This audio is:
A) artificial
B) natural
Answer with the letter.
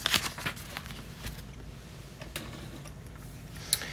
B